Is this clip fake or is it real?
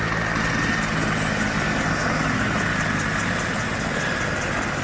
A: real